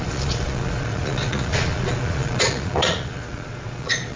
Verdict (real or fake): fake